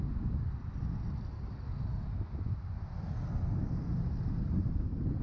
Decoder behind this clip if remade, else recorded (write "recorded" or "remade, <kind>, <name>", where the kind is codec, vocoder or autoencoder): recorded